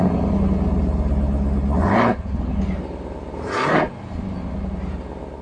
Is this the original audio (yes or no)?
yes